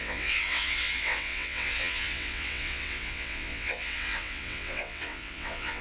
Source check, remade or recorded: remade